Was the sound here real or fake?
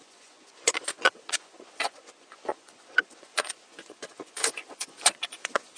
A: fake